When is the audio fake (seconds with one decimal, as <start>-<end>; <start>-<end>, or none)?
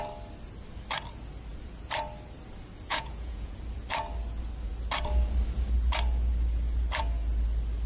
2.9-3.5